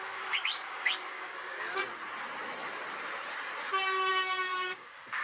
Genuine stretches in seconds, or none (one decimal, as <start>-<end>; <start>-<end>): 1.8-4.1

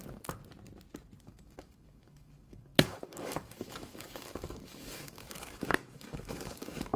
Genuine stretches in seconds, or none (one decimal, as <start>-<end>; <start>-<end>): 0.4-1.2

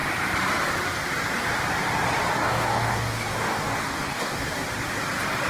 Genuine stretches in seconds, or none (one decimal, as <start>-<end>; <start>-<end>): 0.0-2.4; 4.5-5.5

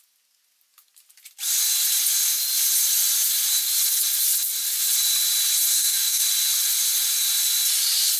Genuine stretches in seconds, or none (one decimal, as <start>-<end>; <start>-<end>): 0.0-5.7; 6.2-8.2